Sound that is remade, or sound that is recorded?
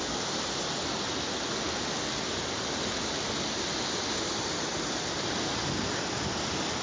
recorded